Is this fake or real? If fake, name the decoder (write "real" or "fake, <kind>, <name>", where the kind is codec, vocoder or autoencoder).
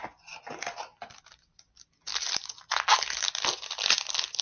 real